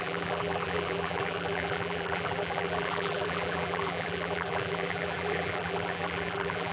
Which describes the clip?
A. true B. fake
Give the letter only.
B